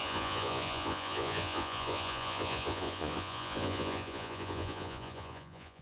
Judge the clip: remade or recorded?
remade